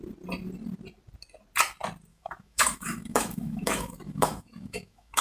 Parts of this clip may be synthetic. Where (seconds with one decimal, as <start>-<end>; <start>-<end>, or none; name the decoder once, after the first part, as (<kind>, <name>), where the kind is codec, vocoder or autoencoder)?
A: 2.1-5.2 (autoencoder, DAC-VAE)